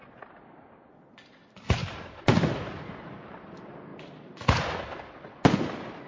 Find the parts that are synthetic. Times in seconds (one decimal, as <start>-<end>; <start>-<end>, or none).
none